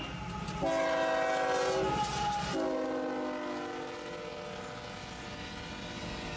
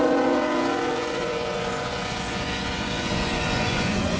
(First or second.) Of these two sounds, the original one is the first